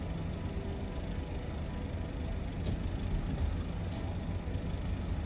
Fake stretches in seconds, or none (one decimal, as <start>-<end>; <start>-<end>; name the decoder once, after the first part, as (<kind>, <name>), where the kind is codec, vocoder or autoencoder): none